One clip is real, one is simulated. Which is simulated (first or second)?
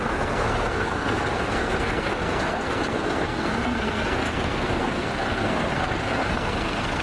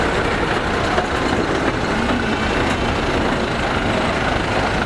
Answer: first